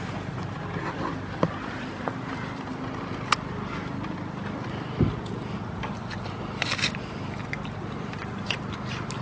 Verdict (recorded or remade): recorded